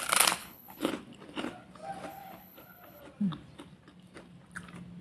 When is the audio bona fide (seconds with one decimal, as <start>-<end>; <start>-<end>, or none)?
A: 0.0-0.4; 0.9-2.1; 3.0-5.0